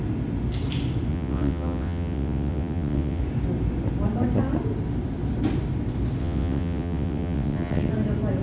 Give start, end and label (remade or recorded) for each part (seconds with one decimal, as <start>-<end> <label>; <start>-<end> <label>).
0.0-1.1 recorded; 1.1-3.2 remade; 3.2-6.2 recorded; 6.2-7.9 remade; 7.9-8.4 recorded